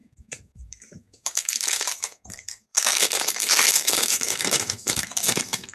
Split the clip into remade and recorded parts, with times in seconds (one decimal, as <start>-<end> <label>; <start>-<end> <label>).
0.0-5.7 remade